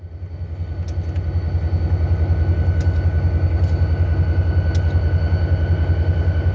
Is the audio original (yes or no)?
yes